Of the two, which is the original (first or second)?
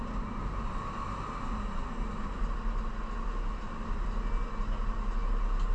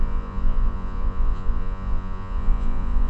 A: first